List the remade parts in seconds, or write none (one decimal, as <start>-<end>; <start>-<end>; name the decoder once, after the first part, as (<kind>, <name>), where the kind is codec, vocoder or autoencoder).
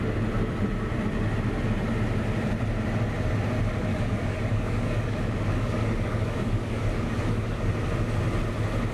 3.9-7.7 (codec, DAC)